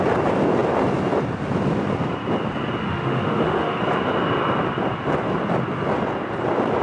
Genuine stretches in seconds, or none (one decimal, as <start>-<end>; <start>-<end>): 0.0-2.8; 3.8-6.8